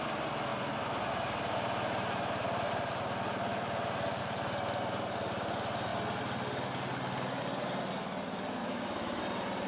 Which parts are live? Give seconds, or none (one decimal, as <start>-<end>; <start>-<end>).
0.0-8.6; 9.2-9.7